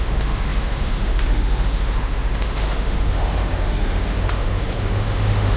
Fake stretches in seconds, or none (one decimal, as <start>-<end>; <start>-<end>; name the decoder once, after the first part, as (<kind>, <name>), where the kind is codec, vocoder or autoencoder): 0.0-5.6 (autoencoder, DAC-VAE)